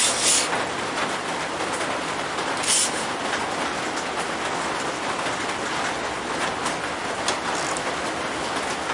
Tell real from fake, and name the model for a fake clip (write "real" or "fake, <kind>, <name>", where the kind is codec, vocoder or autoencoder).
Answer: real